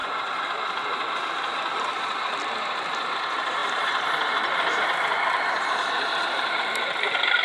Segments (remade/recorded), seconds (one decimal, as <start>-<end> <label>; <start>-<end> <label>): 0.0-1.4 recorded; 1.4-7.4 remade